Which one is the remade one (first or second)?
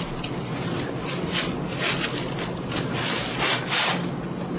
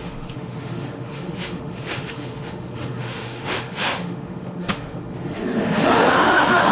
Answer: second